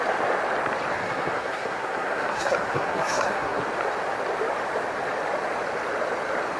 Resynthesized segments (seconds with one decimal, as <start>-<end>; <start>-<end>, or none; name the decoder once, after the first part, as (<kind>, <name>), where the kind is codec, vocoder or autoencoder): 1.0-3.6 (codec, SNAC)